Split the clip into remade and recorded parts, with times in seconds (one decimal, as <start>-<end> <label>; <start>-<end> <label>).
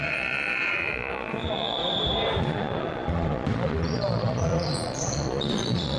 0.0-1.8 remade; 1.8-2.4 recorded; 2.4-6.0 remade